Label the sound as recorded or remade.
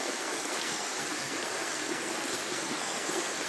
remade